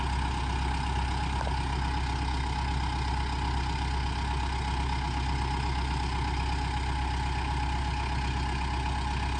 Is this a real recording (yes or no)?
yes